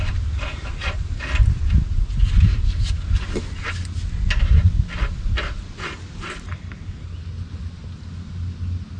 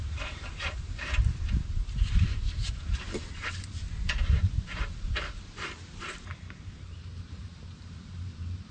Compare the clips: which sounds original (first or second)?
first